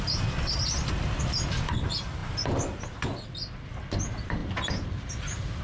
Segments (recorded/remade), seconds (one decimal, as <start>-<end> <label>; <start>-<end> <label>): 0.0-4.4 recorded; 4.4-5.6 remade